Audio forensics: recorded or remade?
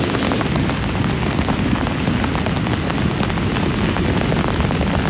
recorded